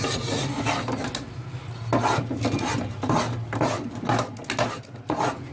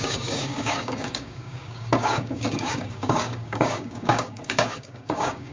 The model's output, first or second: second